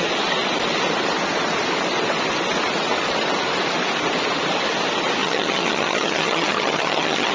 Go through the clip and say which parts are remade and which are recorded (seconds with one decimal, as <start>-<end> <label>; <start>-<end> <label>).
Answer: 0.0-5.2 recorded; 5.2-7.3 remade